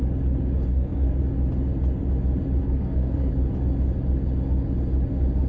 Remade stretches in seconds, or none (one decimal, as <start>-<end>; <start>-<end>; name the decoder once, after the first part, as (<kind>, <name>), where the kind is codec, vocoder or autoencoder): 0.7-1.2 (codec, SNAC); 2.6-3.3